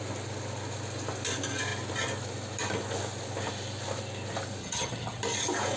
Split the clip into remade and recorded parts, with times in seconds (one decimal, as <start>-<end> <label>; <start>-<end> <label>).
0.0-4.6 recorded; 4.6-5.2 remade; 5.2-5.8 recorded